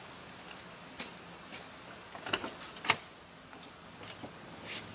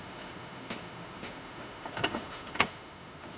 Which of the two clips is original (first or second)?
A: first